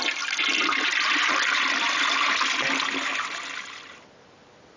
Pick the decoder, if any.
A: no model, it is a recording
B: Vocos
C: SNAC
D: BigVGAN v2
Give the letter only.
A